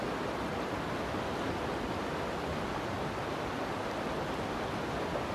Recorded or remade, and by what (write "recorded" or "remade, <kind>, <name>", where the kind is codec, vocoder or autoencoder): recorded